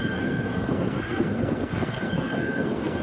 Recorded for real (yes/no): no